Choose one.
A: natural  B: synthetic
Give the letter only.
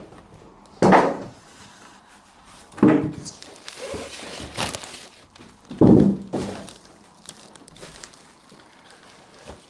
B